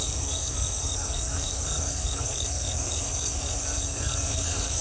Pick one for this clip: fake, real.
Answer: fake